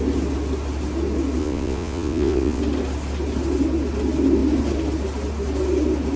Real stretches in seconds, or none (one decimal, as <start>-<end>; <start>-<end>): 0.0-1.4; 2.6-6.2